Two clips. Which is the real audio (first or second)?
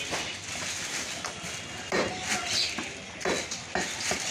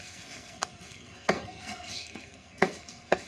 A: first